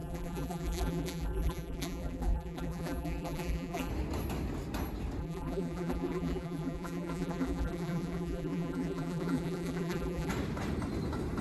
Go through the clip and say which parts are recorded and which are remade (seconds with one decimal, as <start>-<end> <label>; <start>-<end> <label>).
0.0-3.9 remade; 3.9-5.2 recorded; 5.2-10.3 remade; 10.3-11.4 recorded

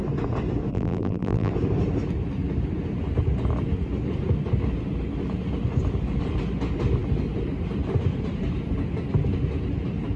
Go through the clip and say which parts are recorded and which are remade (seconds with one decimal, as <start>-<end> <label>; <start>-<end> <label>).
0.0-0.7 recorded; 0.7-1.5 remade; 1.5-10.2 recorded

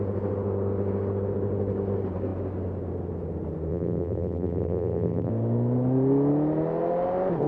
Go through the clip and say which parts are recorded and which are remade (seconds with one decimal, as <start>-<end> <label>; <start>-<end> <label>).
0.0-3.7 recorded; 3.7-5.3 remade; 5.3-7.5 recorded

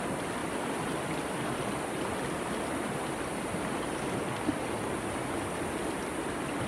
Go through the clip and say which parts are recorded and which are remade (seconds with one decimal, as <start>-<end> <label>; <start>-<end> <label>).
0.0-0.4 recorded; 0.4-3.7 remade; 3.7-6.7 recorded

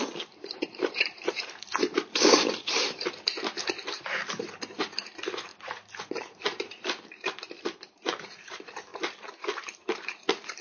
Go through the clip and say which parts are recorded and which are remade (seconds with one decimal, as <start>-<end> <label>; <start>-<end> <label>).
0.0-10.6 remade

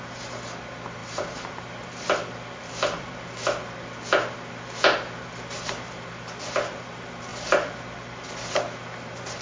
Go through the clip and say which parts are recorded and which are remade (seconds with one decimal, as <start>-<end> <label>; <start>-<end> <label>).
0.0-1.0 recorded; 1.0-3.4 remade; 3.4-7.3 recorded; 7.3-7.8 remade; 7.8-9.4 recorded

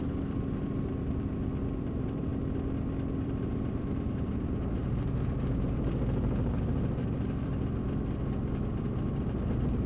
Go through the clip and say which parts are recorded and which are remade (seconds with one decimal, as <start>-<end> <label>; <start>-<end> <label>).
0.0-2.3 remade; 2.3-3.2 recorded; 3.2-7.5 remade; 7.5-8.8 recorded; 8.8-9.9 remade

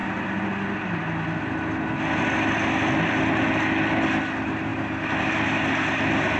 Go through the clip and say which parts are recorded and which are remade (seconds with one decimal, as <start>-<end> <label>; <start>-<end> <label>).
0.0-6.4 recorded